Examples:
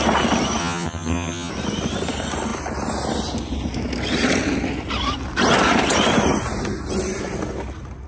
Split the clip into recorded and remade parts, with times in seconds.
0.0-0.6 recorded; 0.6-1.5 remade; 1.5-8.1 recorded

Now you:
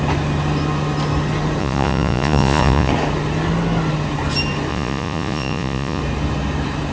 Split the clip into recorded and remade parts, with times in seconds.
0.0-1.6 recorded; 1.6-2.9 remade; 2.9-4.7 recorded; 4.7-6.0 remade; 6.0-6.9 recorded

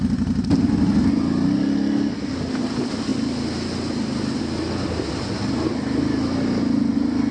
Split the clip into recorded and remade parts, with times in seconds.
0.0-7.3 recorded

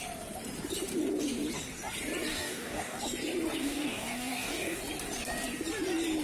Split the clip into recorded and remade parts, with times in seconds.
0.0-2.3 recorded; 2.3-3.0 remade; 3.0-3.6 recorded; 3.6-4.8 remade; 4.8-6.2 recorded